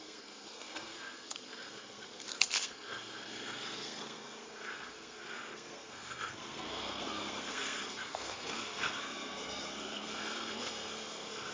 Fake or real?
fake